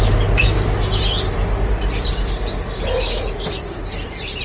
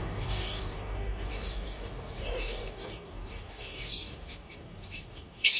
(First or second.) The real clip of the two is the first